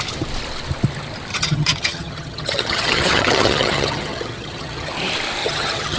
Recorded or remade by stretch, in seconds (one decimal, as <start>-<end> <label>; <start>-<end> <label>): 0.0-1.3 recorded; 1.3-4.9 remade; 4.9-5.4 recorded; 5.4-6.0 remade